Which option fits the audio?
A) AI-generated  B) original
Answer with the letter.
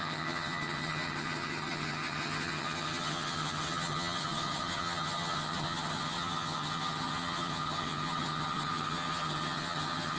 A